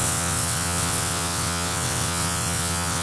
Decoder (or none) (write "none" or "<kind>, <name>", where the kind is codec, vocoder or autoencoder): vocoder, WaveNeXt